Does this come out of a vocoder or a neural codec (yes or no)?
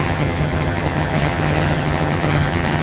yes